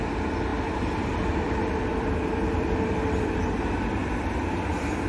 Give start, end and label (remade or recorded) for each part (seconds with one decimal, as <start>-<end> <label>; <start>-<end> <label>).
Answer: 0.0-0.5 recorded; 0.5-3.4 remade; 3.4-4.0 recorded; 4.0-5.1 remade